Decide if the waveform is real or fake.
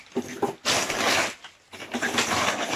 real